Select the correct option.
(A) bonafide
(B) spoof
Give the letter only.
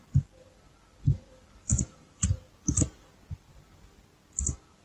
A